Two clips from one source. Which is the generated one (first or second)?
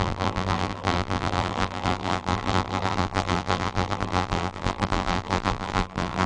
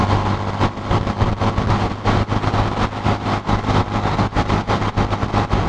first